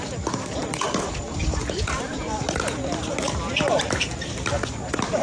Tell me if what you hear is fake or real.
real